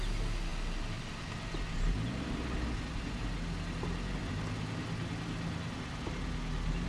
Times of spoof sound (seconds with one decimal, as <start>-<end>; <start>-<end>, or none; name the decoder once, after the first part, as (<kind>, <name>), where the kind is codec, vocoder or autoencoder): none